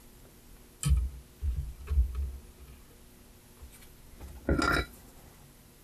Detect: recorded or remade recorded